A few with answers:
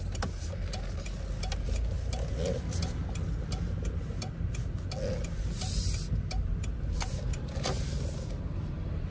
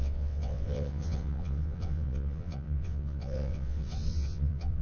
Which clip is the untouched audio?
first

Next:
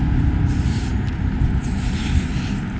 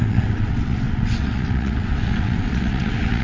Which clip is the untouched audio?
first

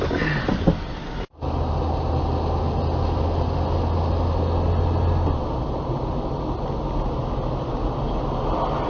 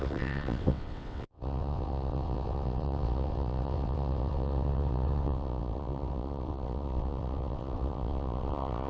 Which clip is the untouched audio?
first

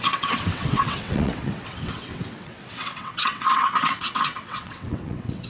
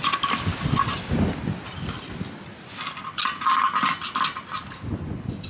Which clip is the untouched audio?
second